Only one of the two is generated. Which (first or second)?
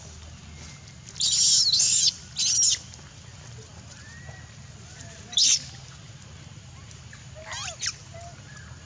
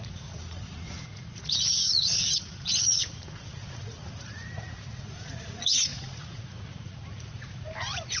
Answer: second